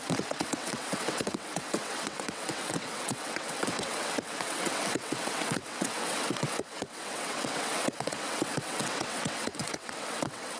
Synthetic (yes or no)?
yes